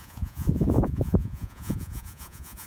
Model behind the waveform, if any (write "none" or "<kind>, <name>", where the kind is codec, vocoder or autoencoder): vocoder, Vocos